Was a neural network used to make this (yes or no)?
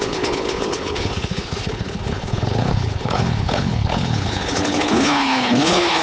yes